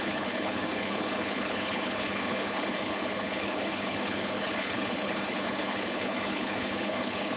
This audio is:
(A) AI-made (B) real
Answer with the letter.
A